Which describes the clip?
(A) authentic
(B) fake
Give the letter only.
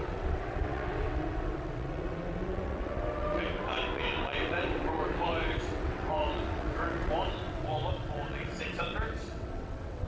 B